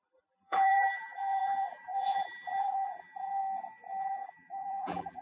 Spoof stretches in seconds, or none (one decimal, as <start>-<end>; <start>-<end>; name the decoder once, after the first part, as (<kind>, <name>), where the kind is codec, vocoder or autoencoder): 0.0-3.4 (vocoder, BigVGAN v2); 4.0-5.2